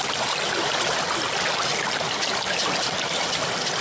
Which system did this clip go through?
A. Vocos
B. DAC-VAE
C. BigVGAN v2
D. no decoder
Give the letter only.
D